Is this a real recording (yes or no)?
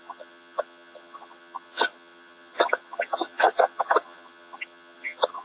no